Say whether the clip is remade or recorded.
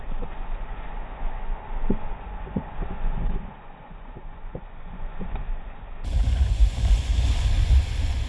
remade